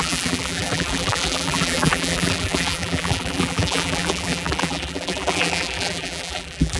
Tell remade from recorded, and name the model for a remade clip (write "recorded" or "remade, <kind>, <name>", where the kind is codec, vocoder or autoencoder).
remade, vocoder, BigVGAN v2